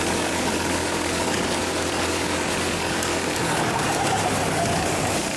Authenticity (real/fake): fake